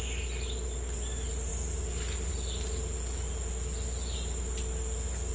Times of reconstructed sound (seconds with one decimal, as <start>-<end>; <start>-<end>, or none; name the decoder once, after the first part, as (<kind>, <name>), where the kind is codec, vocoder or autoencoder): none